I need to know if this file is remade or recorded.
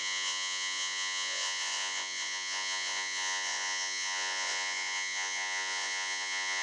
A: remade